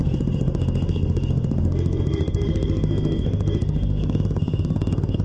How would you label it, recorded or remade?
remade